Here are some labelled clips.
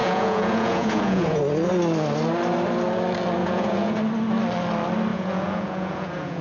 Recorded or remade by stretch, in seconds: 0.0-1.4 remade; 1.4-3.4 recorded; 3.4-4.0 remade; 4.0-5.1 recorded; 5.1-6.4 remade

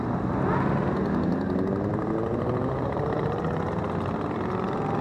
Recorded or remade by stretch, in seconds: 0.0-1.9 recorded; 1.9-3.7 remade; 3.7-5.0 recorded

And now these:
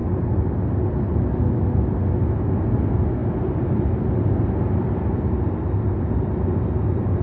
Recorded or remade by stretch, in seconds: 0.0-7.2 recorded

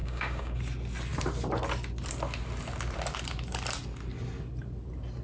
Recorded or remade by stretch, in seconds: 0.0-0.6 remade; 0.6-5.2 recorded

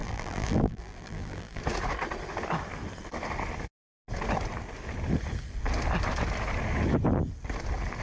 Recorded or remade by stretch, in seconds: 0.0-1.6 remade; 1.6-8.0 recorded